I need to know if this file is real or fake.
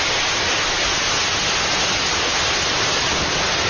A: real